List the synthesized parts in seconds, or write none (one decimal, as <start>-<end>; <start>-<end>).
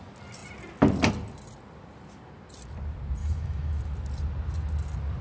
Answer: 3.2-3.8